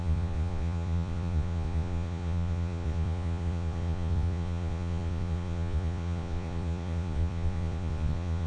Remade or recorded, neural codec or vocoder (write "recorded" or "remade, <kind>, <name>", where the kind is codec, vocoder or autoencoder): remade, vocoder, Vocos